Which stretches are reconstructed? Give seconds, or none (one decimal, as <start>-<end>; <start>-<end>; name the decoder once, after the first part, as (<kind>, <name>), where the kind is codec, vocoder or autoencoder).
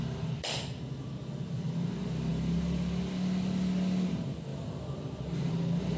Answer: 4.5-5.5 (vocoder, BigVGAN v2)